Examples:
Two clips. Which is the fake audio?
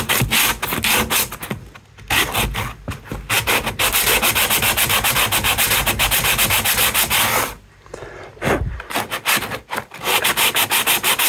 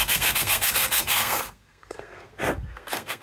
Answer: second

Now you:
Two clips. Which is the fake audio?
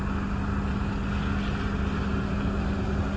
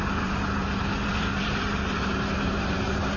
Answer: second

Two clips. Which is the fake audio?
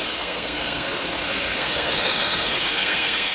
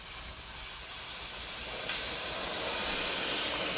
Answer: first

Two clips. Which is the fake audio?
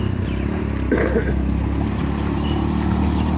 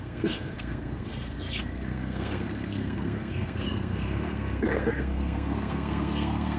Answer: second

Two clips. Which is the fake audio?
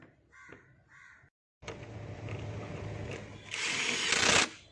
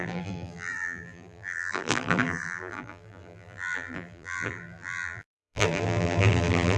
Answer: second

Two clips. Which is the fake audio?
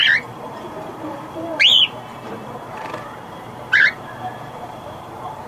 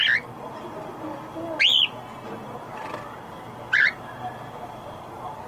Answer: first